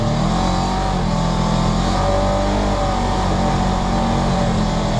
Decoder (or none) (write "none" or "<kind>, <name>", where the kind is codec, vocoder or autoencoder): none